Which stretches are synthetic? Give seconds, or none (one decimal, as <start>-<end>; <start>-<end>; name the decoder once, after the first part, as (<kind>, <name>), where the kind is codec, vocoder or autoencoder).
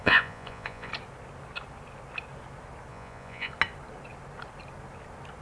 0.0-0.9 (vocoder, Vocos); 2.9-3.5